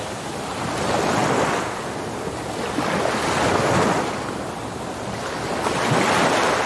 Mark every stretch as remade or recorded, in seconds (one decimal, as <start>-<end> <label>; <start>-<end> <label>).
0.0-6.7 recorded